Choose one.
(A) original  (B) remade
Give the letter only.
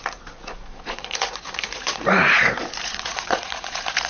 B